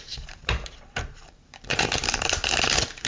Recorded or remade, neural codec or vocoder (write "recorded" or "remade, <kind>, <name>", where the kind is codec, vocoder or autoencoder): remade, vocoder, BigVGAN v2